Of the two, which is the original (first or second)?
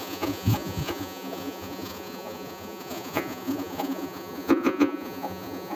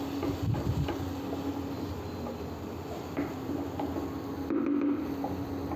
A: second